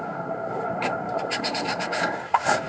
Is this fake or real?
fake